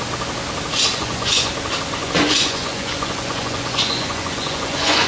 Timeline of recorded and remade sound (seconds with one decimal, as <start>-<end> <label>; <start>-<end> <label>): 0.0-0.9 recorded; 0.9-1.5 remade; 1.5-2.0 recorded; 2.0-5.1 remade